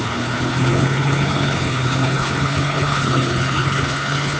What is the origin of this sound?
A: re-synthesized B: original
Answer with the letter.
A